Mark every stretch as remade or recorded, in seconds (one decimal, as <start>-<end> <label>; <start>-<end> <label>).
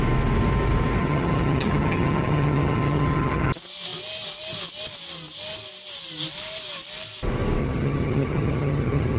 0.0-1.0 recorded; 1.0-3.5 remade; 3.5-7.6 recorded; 7.6-9.2 remade